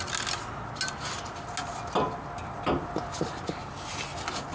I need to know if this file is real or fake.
real